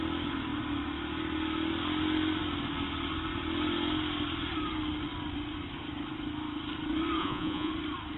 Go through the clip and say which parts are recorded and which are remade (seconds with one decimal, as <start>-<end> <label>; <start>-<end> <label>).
0.0-7.2 recorded; 7.2-7.7 remade; 7.7-8.2 recorded